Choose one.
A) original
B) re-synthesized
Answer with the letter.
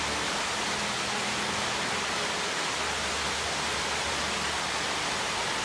A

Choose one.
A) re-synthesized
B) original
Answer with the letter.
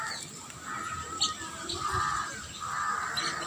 B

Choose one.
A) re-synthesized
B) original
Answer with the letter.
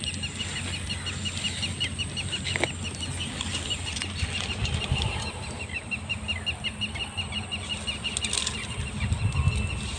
B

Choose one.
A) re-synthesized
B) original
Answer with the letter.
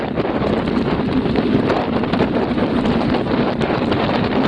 A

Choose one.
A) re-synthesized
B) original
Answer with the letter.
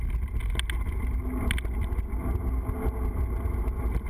B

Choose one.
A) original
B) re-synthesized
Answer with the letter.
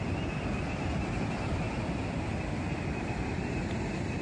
B